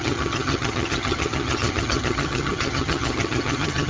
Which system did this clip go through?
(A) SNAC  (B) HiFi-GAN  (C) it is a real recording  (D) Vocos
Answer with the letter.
B